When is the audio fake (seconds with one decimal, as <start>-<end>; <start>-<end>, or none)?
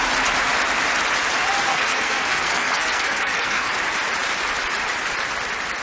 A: 1.7-3.7